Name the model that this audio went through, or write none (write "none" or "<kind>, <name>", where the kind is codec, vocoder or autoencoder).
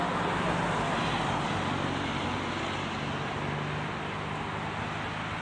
none